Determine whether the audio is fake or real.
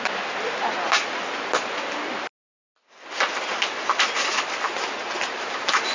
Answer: real